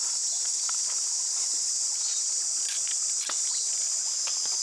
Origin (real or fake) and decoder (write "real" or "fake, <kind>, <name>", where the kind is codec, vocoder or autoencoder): real